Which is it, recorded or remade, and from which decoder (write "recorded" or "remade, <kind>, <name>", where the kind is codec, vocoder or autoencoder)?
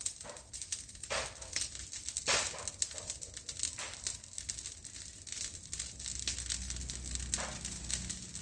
recorded